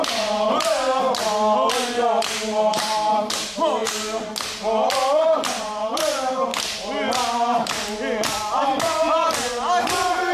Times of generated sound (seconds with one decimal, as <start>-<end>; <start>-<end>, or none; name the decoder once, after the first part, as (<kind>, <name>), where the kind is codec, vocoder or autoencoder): none